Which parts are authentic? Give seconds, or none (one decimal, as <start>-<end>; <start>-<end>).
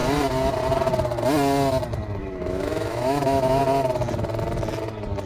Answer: 0.0-2.2; 3.6-5.3